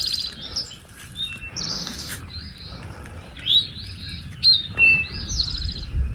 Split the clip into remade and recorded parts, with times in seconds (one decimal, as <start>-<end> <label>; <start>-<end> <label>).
0.0-1.7 recorded; 1.7-2.2 remade; 2.2-6.1 recorded